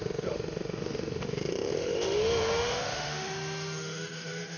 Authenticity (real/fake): fake